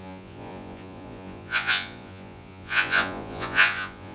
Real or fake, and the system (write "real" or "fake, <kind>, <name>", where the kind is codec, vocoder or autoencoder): fake, vocoder, Vocos